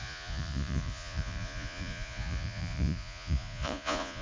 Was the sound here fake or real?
fake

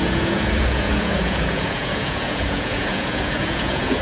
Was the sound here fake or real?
fake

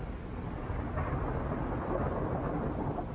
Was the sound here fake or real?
real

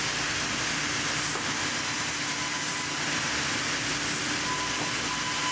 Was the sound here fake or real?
real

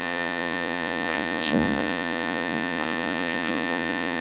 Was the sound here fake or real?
fake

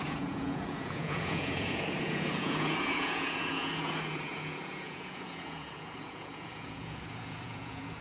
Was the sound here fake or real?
fake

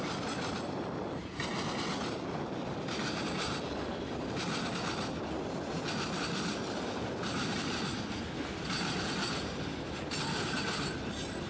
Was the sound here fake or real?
real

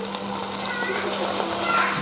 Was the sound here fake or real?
real